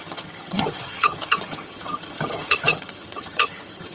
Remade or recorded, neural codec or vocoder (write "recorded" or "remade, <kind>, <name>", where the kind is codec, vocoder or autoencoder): remade, vocoder, HiFi-GAN